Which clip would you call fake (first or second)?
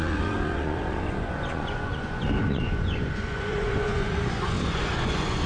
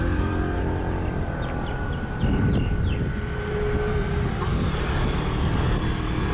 first